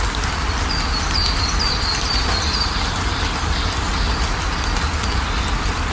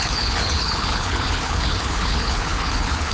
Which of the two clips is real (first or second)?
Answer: first